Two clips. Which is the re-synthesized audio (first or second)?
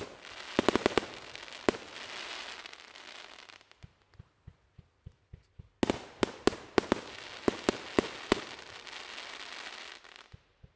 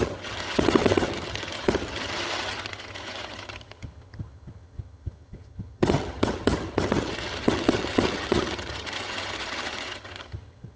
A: second